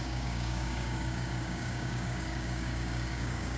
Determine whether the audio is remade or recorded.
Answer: remade